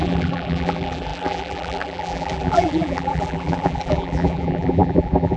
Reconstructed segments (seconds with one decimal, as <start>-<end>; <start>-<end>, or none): 0.0-5.4

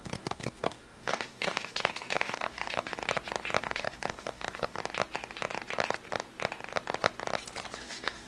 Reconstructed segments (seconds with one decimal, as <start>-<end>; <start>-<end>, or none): 0.0-3.0; 3.6-4.8; 7.8-8.3

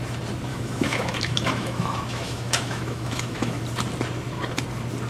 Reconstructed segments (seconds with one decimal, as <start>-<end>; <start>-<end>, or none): 0.5-3.6

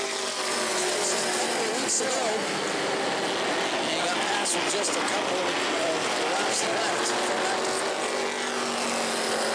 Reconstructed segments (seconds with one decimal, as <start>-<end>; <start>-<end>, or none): none

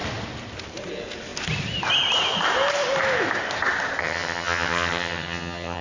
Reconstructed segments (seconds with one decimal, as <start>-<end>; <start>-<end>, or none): 4.0-5.8